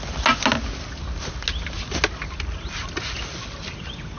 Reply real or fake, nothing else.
real